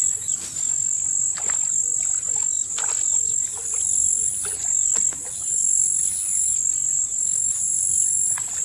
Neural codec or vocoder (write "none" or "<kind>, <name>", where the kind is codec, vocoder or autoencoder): none